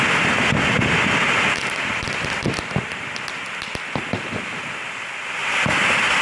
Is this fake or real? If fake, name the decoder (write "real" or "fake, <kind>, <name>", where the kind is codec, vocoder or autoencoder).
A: real